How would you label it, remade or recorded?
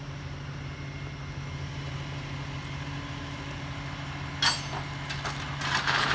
recorded